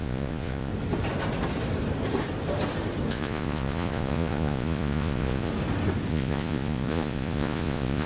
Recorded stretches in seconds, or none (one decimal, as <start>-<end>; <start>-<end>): 0.7-3.1; 5.5-6.1

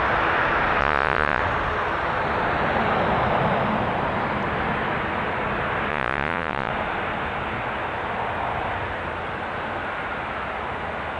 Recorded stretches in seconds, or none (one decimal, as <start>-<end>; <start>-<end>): 0.0-0.8; 1.4-5.9; 6.7-11.2

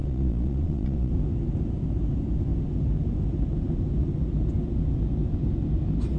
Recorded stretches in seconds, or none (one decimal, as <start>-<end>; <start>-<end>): 1.1-6.2

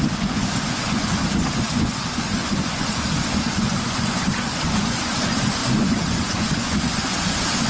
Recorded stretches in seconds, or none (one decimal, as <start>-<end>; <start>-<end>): none

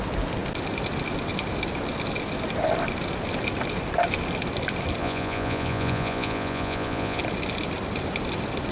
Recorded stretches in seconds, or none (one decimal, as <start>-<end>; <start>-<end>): 0.0-5.0; 7.2-8.7

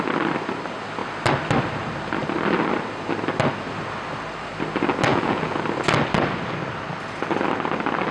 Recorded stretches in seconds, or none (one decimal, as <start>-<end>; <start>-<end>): 0.0-5.1; 5.6-8.1

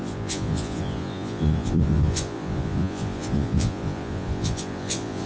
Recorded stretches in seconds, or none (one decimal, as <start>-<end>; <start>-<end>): none

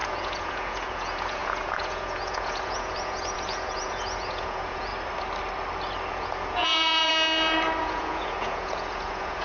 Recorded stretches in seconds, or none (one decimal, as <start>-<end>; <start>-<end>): 4.9-6.1; 7.1-7.8